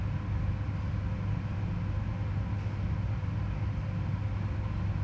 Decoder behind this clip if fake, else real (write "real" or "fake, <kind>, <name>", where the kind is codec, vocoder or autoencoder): real